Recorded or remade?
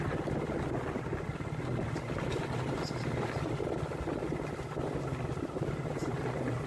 recorded